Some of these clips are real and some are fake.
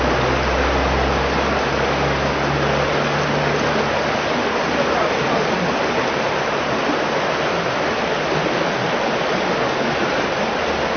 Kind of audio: real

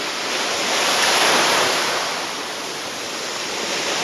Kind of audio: real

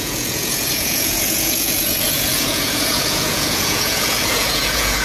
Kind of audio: fake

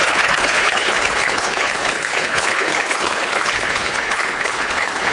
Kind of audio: fake